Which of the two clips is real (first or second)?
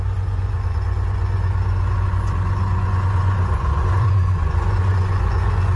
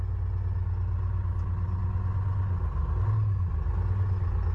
second